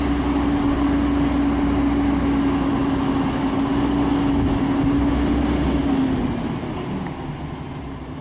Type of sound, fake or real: real